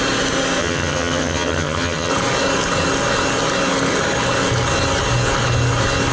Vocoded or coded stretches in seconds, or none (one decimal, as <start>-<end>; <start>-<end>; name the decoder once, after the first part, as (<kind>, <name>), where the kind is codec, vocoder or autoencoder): 0.6-2.1 (vocoder, HiFi-GAN)